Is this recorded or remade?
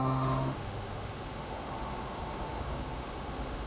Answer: remade